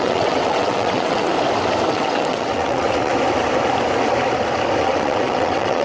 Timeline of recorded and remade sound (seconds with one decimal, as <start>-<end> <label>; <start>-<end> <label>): 0.0-1.3 remade; 1.3-1.9 recorded; 1.9-3.1 remade; 3.1-4.8 recorded; 4.8-5.8 remade